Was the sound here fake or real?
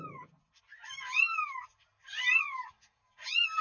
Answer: real